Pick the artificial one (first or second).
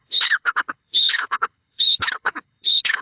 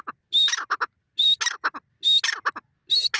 first